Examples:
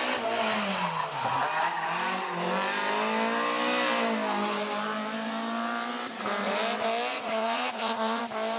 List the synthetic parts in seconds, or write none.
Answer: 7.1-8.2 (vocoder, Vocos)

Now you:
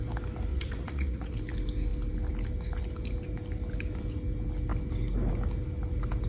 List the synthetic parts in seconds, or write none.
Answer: 0.5-1.3 (vocoder, Vocos)